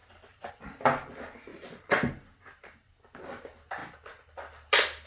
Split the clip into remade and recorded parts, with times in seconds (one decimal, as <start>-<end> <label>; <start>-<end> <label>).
0.0-0.5 remade; 0.5-1.5 recorded; 1.5-2.1 remade; 2.1-5.1 recorded